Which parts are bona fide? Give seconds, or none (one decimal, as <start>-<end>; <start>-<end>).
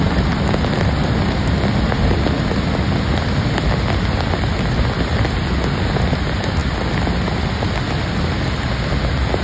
0.0-9.4